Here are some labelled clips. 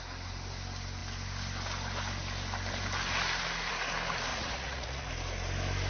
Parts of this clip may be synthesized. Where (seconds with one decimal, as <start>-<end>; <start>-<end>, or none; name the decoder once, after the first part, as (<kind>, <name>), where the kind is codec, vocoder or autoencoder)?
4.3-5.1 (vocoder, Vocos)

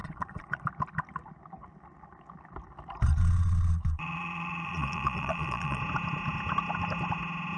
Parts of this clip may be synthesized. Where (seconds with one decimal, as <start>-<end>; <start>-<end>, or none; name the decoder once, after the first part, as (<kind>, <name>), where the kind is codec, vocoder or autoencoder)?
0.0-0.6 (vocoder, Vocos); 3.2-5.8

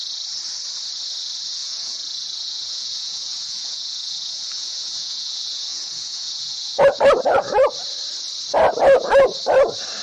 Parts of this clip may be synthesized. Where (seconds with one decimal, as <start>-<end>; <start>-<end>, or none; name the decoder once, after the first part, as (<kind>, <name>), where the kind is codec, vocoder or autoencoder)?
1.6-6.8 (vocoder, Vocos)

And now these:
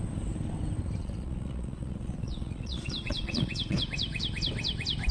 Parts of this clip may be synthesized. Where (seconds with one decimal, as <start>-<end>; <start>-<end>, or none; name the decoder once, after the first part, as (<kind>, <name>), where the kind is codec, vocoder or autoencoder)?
1.0-3.9 (vocoder, Vocos)

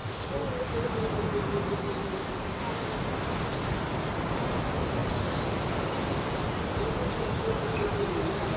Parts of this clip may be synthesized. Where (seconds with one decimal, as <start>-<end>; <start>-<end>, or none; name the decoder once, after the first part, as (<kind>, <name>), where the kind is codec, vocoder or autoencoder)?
none